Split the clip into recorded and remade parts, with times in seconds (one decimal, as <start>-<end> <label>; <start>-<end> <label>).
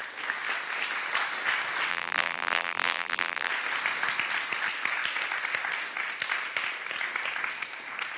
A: 0.0-1.9 recorded; 1.9-3.5 remade; 3.5-8.2 recorded